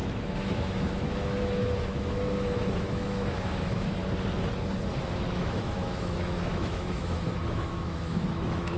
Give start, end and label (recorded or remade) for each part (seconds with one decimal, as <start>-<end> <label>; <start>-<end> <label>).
0.0-4.0 remade; 4.0-5.3 recorded; 5.3-8.8 remade